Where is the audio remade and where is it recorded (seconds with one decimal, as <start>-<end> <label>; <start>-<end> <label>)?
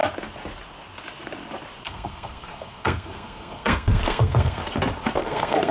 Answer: 0.0-1.8 recorded; 1.8-4.6 remade; 4.6-5.2 recorded; 5.2-5.7 remade